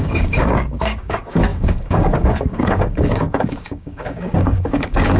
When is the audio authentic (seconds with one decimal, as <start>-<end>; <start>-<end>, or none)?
none